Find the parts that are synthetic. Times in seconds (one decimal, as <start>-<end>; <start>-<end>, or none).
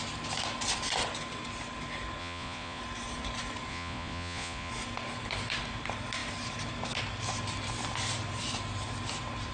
2.2-2.8; 3.7-4.7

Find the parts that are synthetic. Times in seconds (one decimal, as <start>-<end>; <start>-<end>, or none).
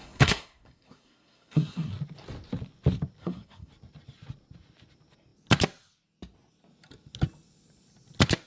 0.0-1.9; 3.2-3.7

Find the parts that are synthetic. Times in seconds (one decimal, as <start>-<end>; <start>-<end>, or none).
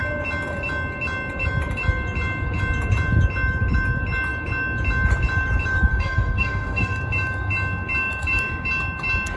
5.9-7.0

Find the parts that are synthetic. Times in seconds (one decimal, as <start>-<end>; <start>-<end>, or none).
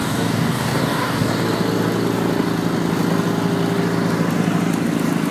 0.0-1.3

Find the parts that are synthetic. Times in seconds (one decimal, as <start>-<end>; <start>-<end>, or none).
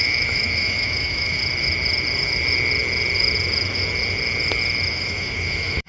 0.0-1.4; 4.9-5.9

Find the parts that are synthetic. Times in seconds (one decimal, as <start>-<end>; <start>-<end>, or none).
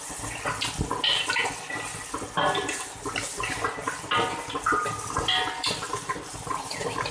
none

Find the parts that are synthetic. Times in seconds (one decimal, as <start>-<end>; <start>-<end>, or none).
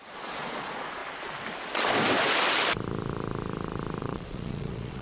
0.0-1.0; 4.0-5.0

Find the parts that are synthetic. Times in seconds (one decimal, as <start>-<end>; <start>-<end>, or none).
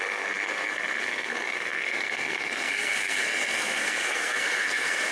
0.0-5.1